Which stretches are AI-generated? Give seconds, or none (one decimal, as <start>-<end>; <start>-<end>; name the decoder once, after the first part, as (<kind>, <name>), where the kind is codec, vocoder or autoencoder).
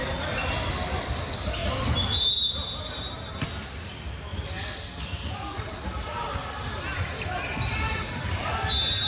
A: none